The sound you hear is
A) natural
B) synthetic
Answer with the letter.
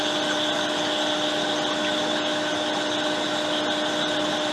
A